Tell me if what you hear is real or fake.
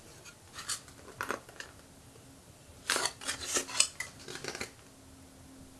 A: real